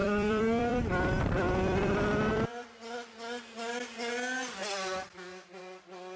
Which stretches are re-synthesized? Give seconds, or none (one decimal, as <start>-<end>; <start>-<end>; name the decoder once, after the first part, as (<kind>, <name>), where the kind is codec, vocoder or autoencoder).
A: 0.0-1.9 (vocoder, BigVGAN v2); 2.3-3.1